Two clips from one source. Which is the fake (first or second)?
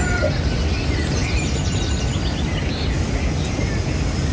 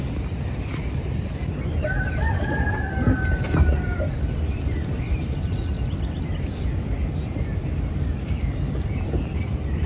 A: second